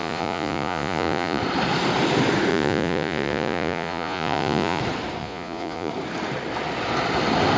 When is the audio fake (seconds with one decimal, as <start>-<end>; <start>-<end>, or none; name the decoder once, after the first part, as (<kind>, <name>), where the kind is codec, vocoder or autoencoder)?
0.0-1.4 (vocoder, Vocos); 2.5-4.8; 5.2-5.9